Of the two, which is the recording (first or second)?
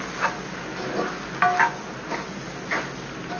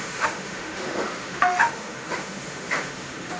first